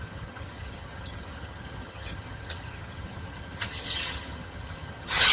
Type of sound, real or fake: fake